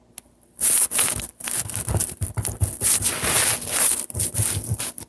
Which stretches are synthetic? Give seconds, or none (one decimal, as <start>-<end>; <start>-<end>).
none